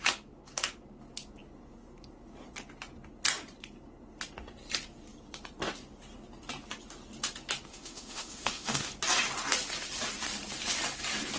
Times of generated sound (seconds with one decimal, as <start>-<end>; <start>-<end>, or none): 7.7-8.9